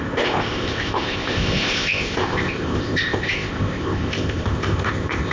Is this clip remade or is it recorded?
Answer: remade